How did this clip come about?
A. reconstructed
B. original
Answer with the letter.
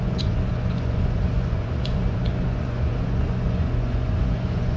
A